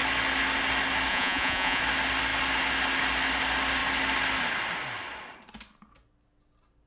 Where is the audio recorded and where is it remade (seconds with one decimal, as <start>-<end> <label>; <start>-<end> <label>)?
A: 0.0-1.1 recorded; 1.1-1.8 remade; 1.8-6.9 recorded